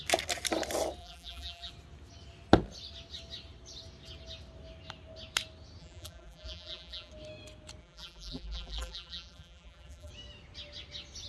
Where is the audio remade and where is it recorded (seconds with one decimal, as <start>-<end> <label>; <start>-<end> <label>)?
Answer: 0.0-1.0 recorded; 1.0-1.7 remade; 1.7-5.8 recorded; 5.8-7.1 remade; 7.1-7.8 recorded; 7.8-10.1 remade; 10.1-11.3 recorded